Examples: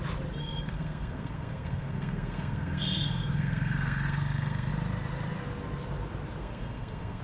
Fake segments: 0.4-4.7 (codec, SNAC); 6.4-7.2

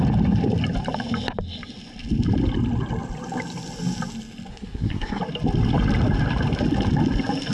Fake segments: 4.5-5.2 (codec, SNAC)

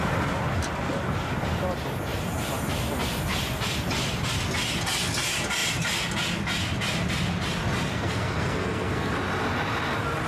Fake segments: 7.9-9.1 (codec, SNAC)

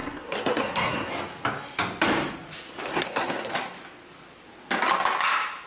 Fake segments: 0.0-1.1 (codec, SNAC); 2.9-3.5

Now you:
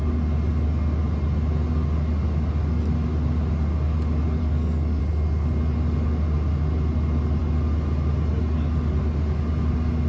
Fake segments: 4.4-5.0 (codec, SNAC)

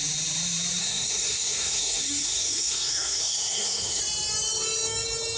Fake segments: 0.8-4.0 (codec, SNAC)

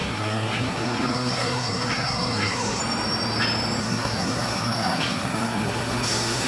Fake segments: 0.0-2.8 (codec, SNAC); 3.8-6.5

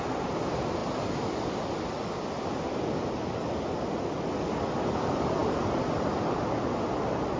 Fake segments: none